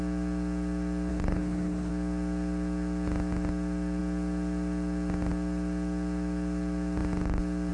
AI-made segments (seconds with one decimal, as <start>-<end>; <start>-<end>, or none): 1.1-1.9